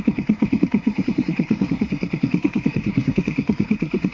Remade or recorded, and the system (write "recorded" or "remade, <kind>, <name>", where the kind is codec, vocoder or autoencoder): remade, codec, SNAC